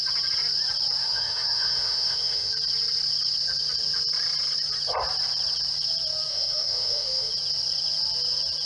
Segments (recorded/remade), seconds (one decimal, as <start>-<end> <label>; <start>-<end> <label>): 0.0-1.0 recorded; 1.0-2.5 remade; 2.5-6.3 recorded; 6.3-7.3 remade; 7.3-8.7 recorded